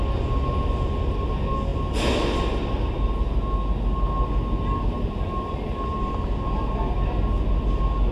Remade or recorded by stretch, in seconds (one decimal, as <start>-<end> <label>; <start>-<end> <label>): 0.0-8.1 recorded